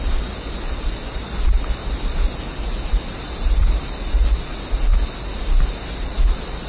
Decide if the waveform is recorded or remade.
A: recorded